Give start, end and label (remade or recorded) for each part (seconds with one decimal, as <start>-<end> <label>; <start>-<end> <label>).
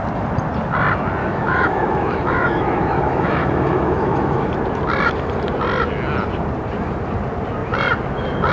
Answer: 0.0-1.2 recorded; 1.2-4.4 remade; 4.4-8.5 recorded